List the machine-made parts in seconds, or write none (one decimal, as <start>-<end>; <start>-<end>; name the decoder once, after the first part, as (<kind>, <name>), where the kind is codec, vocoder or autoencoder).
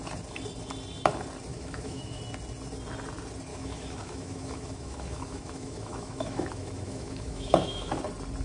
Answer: 1.5-2.2 (autoencoder, DAC-VAE); 3.5-8.0